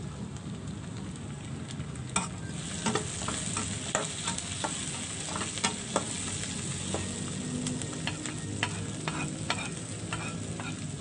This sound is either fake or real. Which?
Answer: real